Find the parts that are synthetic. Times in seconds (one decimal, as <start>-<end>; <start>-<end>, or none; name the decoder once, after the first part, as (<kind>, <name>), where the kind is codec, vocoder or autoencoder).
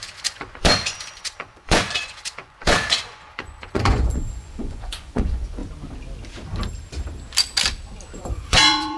0.0-5.6 (vocoder, Vocos); 8.2-9.0